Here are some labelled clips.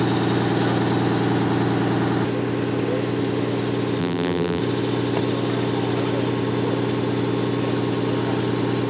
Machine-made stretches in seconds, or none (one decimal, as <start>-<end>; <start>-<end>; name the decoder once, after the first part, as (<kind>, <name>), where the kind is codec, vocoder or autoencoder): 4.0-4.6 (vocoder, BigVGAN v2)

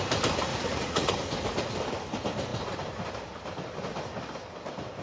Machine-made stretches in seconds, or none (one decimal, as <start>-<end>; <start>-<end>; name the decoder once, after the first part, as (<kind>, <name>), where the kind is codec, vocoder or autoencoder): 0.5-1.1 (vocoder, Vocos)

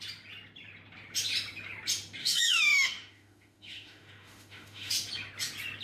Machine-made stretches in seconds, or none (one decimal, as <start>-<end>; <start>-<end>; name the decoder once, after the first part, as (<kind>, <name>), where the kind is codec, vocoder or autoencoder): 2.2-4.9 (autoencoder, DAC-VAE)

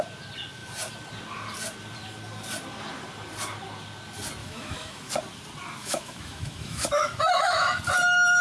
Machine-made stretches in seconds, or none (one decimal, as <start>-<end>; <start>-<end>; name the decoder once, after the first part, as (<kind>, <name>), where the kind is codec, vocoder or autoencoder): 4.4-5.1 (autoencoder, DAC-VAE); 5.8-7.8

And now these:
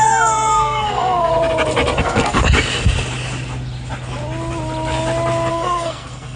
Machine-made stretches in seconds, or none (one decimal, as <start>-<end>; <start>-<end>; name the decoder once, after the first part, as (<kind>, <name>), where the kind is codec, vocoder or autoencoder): 0.0-1.3 (codec, SNAC); 2.0-2.4; 5.5-6.4